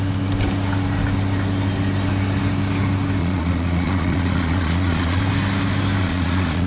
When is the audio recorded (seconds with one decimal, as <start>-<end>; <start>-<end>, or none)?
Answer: 0.0-3.2; 5.2-6.0